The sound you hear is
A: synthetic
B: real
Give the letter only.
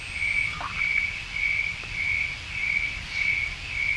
B